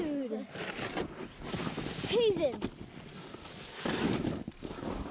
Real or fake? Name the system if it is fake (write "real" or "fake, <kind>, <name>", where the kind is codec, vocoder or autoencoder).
real